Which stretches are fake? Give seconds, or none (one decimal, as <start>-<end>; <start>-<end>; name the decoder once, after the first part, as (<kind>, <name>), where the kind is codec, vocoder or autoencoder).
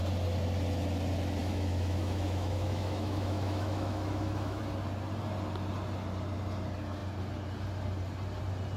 1.4-4.6 (autoencoder, DAC-VAE)